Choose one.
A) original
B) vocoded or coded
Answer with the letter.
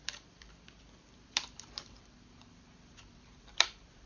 B